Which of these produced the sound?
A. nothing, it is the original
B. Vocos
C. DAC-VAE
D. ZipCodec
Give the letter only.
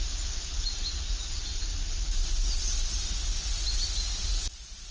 A